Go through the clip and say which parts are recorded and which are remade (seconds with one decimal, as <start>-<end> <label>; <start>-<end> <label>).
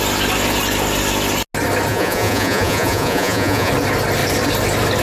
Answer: 0.0-1.9 recorded; 1.9-3.7 remade; 3.7-5.0 recorded